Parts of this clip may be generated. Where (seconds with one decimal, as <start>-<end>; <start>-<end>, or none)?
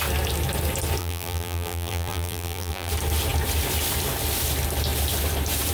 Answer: 1.0-2.9